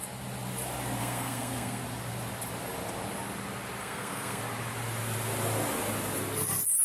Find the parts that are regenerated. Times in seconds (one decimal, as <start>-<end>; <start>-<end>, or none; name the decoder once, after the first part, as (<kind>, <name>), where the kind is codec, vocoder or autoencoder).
1.0-1.8 (codec, SNAC); 3.8-4.4